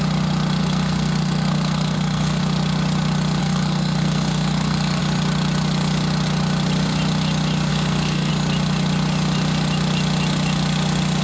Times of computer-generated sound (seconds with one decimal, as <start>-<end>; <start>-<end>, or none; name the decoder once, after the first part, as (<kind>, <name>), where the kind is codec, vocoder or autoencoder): 0.6-2.4 (codec, SNAC); 3.4-5.0; 7.7-8.3